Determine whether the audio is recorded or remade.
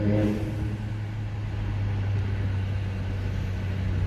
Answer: recorded